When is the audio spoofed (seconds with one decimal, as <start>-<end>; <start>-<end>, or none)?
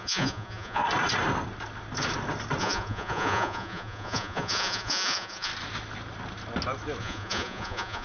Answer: 0.0-0.8; 2.6-5.5; 7.0-8.0